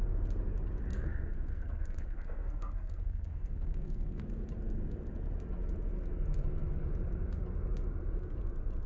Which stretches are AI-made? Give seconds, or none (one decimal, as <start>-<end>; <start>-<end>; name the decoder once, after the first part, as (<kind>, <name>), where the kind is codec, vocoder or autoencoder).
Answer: 0.9-4.2 (codec, SNAC)